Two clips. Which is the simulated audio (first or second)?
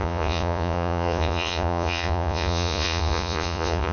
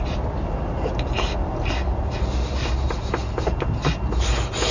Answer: first